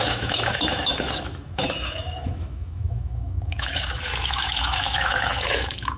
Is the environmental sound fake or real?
fake